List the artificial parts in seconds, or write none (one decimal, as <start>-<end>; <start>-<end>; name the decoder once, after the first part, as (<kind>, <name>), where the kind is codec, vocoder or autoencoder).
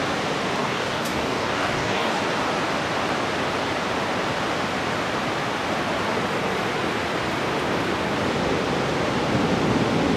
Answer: 0.6-2.2 (codec, DAC)